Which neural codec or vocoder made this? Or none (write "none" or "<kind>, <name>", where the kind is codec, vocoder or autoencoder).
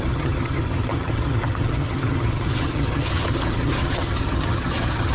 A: vocoder, HiFi-GAN